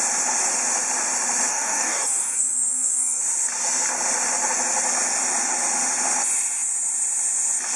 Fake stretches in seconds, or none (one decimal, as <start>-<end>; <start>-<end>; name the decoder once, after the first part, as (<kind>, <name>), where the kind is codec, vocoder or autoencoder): 1.5-3.2 (codec, DAC)